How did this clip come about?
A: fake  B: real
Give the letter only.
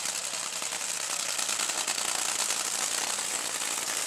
B